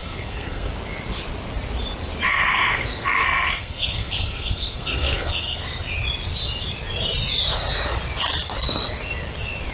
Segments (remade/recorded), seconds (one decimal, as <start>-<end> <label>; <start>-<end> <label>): 0.0-0.7 remade; 0.7-2.3 recorded; 2.3-5.6 remade; 5.6-9.7 recorded